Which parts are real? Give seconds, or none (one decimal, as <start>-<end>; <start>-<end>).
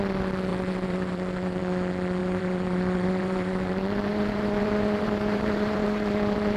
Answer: 0.0-0.5; 1.6-2.2